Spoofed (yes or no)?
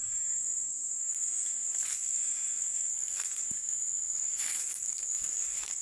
yes